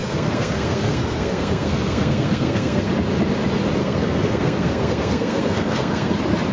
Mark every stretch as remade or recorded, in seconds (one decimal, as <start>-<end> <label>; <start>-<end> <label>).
0.0-2.9 remade; 2.9-3.8 recorded; 3.8-6.1 remade; 6.1-6.5 recorded